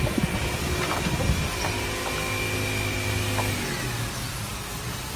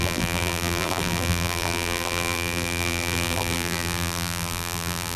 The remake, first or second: second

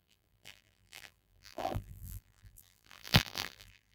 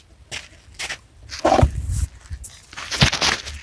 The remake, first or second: first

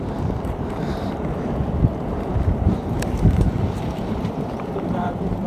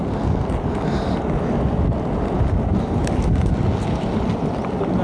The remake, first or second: first